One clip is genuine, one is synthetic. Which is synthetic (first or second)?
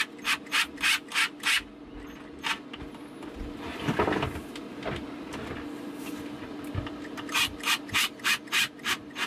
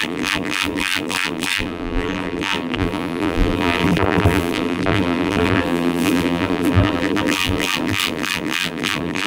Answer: second